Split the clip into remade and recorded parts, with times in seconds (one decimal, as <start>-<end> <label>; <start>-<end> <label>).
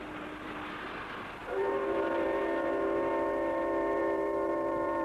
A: 0.0-5.0 recorded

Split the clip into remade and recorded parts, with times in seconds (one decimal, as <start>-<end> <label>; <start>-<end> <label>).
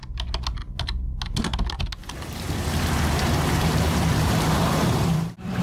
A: 0.0-2.0 recorded; 2.0-5.6 remade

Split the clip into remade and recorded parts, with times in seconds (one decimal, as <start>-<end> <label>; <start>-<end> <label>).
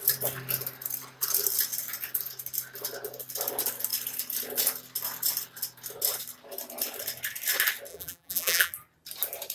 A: 0.0-7.9 recorded; 7.9-8.7 remade; 8.7-9.5 recorded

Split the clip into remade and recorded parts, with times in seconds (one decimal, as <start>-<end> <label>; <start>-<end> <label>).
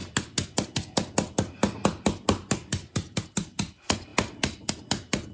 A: 0.0-4.1 recorded; 4.1-4.7 remade; 4.7-5.3 recorded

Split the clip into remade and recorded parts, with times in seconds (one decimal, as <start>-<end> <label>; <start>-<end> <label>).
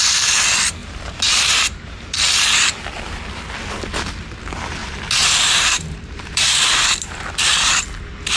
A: 0.0-0.8 recorded; 0.8-2.1 remade; 2.1-4.8 recorded; 4.8-7.8 remade; 7.8-8.4 recorded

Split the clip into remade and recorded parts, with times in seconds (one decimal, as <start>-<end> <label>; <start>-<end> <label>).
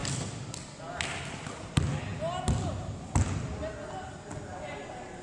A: 0.0-5.2 recorded